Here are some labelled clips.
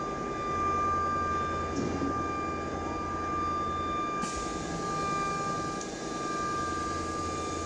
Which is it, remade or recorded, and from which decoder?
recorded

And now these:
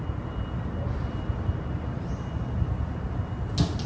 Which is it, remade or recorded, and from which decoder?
recorded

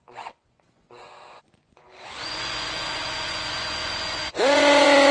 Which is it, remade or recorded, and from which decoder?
remade, vocoder, Vocos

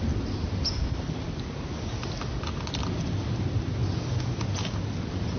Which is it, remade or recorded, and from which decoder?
recorded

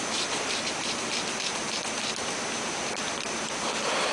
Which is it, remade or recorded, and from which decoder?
remade, vocoder, BigVGAN v2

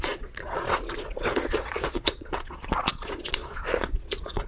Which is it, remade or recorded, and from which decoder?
remade, vocoder, Vocos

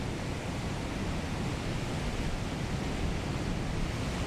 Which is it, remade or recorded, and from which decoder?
recorded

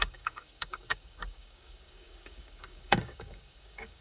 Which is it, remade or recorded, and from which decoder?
remade, codec, DAC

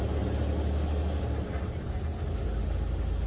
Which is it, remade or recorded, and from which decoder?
recorded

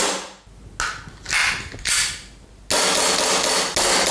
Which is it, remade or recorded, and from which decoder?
recorded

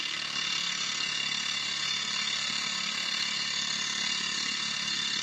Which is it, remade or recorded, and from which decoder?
remade, codec, SNAC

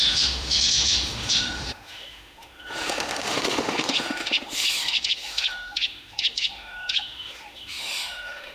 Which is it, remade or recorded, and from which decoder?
remade, autoencoder, DAC-VAE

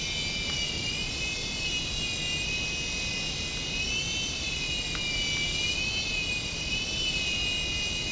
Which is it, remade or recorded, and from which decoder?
recorded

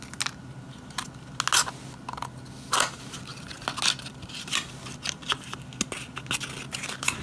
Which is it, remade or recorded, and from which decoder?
recorded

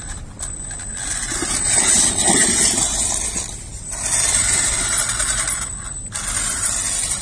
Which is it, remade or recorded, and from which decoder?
recorded